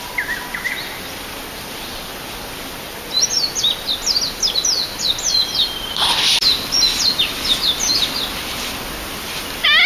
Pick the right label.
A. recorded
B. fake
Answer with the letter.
A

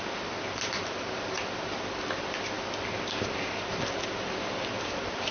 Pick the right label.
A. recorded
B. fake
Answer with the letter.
A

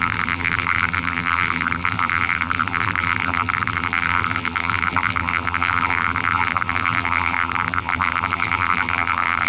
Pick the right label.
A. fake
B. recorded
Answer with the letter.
A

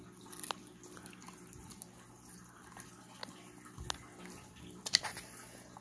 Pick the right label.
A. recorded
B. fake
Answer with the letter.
A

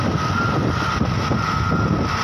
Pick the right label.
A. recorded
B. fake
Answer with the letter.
A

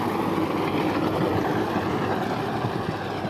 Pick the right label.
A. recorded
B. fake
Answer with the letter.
A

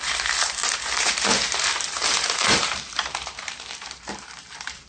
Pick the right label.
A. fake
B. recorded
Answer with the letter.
A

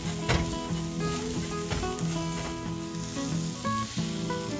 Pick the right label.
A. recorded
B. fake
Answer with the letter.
A